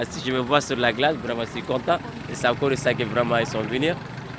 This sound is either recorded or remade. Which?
recorded